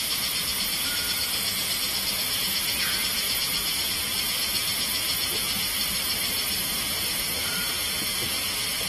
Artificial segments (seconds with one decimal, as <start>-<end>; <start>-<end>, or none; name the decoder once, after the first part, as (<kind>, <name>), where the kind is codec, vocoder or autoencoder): 0.0-5.7 (vocoder, Vocos); 6.7-8.9